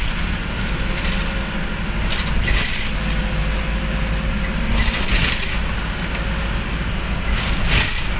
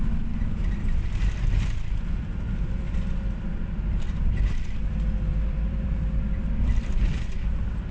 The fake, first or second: second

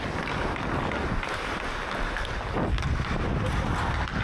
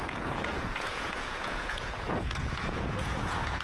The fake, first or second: second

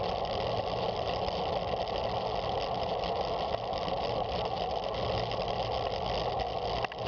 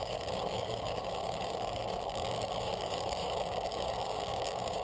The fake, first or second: second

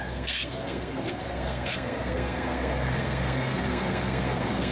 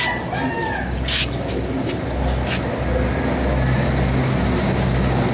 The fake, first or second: first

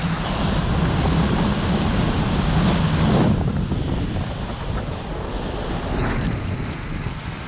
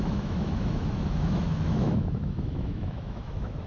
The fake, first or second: second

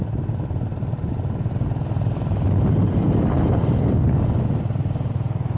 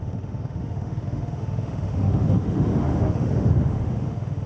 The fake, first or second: second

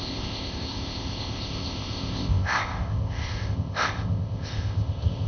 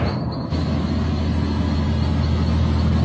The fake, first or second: first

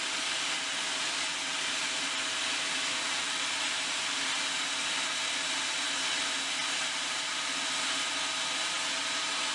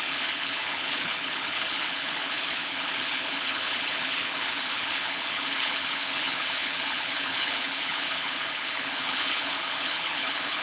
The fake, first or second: second